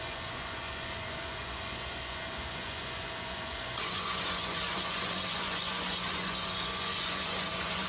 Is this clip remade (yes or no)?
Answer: yes